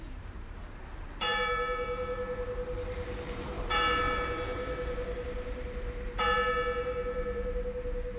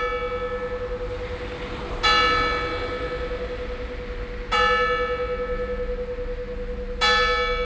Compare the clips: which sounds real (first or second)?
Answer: second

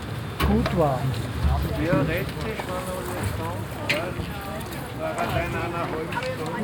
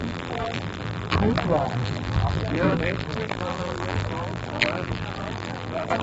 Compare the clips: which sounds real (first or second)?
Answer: first